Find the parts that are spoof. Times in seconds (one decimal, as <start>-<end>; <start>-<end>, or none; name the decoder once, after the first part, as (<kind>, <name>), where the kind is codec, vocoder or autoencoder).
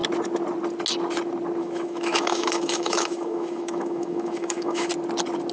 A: 1.6-4.9 (autoencoder, DAC-VAE)